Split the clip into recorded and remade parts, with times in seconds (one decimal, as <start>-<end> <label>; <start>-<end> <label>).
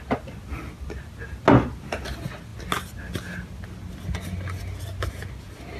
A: 0.0-5.8 recorded